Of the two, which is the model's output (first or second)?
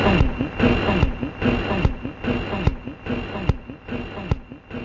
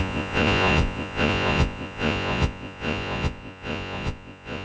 second